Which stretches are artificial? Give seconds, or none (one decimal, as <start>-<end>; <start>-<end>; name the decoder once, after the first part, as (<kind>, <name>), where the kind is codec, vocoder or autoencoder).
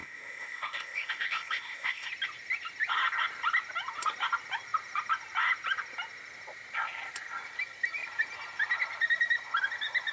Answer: 0.0-2.1 (codec, ZipCodec)